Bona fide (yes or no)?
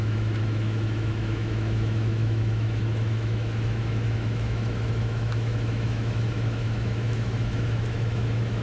no